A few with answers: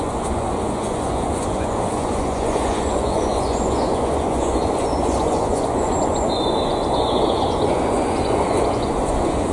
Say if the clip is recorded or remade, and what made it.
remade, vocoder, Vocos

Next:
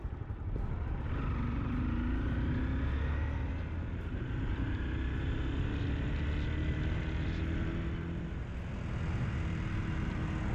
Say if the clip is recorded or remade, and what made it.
recorded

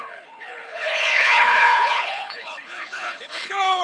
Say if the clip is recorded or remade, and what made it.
remade, codec, HILCodec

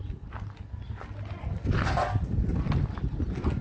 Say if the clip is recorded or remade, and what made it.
recorded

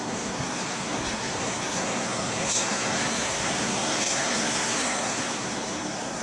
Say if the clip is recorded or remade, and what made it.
remade, codec, SNAC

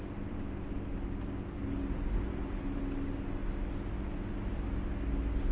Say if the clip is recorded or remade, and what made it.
recorded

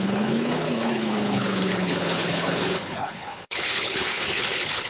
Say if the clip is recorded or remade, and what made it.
remade, codec, HILCodec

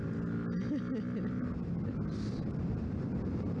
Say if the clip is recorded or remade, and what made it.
recorded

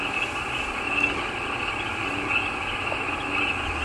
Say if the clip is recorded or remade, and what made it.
recorded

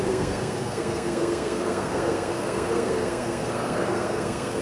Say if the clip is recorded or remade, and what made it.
remade, codec, SNAC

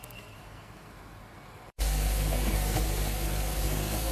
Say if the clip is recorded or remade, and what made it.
remade, codec, SNAC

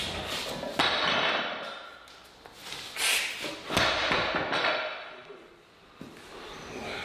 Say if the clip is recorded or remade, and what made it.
recorded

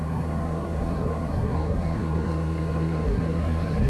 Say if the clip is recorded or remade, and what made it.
remade, codec, SNAC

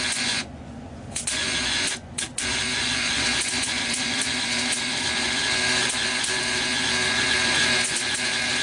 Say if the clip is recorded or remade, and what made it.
remade, vocoder, Vocos